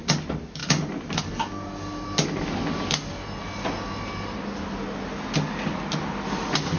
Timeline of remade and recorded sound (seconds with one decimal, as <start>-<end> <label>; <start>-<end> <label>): 0.0-0.6 recorded; 0.6-1.2 remade; 1.2-6.8 recorded